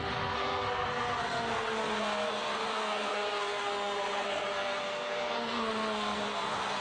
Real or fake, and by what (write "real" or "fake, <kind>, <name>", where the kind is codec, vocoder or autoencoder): fake, codec, SNAC